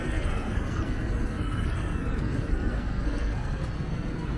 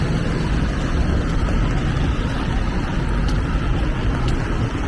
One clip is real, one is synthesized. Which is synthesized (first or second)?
first